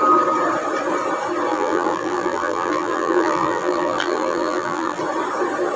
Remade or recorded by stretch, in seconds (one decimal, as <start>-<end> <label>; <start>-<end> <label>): 0.0-1.5 recorded; 1.5-5.0 remade; 5.0-5.8 recorded